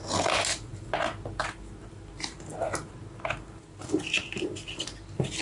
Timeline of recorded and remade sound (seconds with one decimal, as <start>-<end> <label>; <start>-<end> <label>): 0.0-5.4 recorded